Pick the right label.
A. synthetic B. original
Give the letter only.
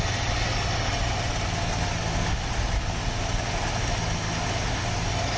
B